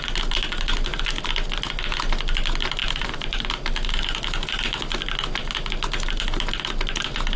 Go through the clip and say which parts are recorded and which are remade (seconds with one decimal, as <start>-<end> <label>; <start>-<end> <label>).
0.0-2.8 recorded; 2.8-3.5 remade; 3.5-7.4 recorded